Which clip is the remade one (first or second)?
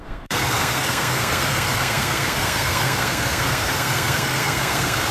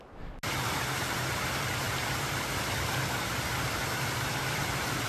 first